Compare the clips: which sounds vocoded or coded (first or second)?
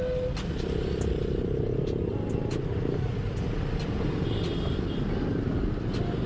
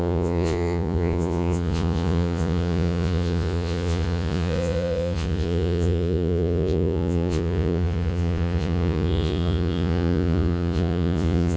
second